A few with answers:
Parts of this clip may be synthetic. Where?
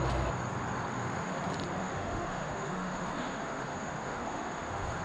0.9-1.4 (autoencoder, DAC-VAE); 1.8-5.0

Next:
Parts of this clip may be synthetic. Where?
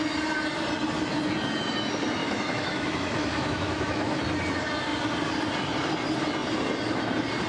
2.2-4.2 (autoencoder, DAC-VAE)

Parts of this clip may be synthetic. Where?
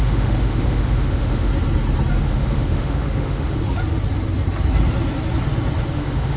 0.0-1.5 (autoencoder, DAC-VAE); 2.2-3.6; 5.9-6.4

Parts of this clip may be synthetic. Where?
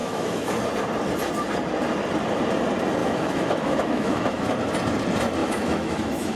0.0-0.6 (autoencoder, DAC-VAE); 3.0-4.5; 5.4-6.4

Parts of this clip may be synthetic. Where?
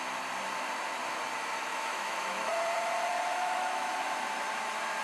1.7-2.5 (autoencoder, DAC-VAE); 3.3-4.0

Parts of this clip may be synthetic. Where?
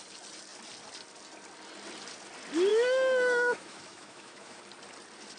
2.7-4.6 (autoencoder, DAC-VAE)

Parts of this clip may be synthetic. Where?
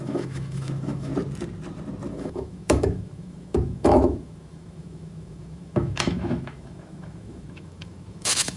0.0-1.1 (autoencoder, DAC-VAE); 2.1-8.6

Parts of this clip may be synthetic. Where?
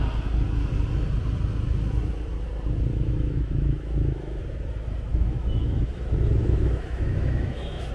2.9-4.4 (autoencoder, DAC-VAE); 5.1-6.0; 6.4-7.9